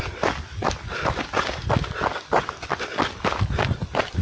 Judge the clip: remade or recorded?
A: recorded